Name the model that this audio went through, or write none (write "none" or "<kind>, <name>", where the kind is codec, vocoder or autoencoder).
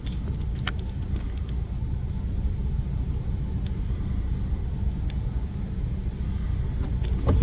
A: none